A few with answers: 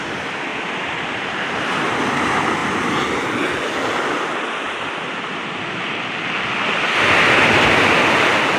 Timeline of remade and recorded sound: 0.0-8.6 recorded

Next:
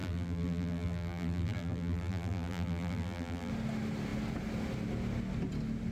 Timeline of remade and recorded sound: 0.0-3.5 remade; 3.5-5.9 recorded

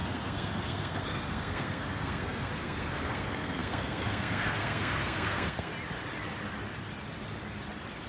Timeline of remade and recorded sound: 0.0-5.7 remade; 5.7-8.1 recorded

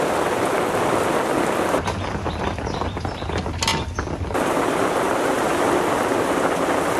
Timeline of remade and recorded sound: 0.0-7.0 recorded